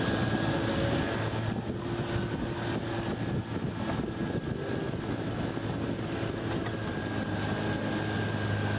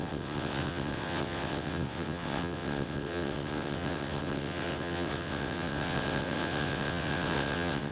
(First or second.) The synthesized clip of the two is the second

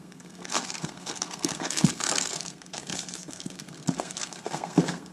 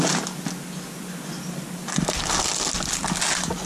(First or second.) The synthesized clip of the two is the first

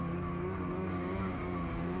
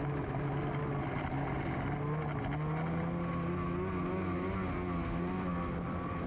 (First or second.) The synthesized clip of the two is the first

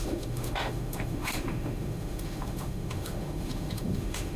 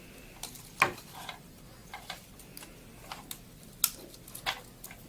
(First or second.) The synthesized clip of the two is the first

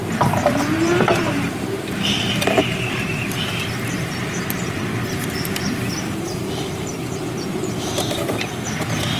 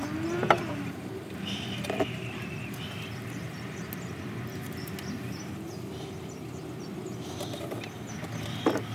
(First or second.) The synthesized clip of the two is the first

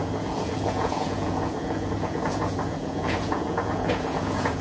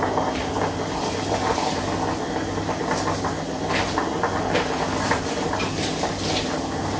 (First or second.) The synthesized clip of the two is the first